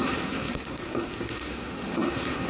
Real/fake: fake